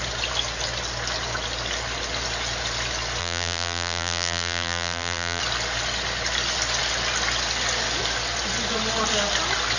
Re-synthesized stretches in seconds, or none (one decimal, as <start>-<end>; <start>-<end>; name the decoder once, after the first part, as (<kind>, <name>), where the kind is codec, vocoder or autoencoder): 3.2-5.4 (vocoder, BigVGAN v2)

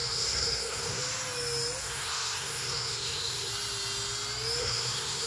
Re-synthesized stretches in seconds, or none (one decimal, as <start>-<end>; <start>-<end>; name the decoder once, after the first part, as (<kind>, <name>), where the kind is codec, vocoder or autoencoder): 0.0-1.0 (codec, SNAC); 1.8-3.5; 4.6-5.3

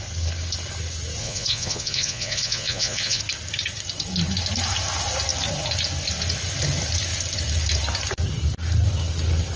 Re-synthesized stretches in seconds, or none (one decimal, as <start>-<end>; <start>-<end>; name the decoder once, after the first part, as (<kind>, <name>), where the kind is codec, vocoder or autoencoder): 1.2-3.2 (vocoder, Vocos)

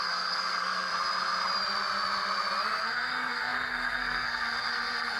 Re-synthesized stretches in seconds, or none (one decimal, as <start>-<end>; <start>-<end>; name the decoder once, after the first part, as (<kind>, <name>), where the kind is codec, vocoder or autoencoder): 0.0-0.9 (codec, SNAC); 2.8-5.2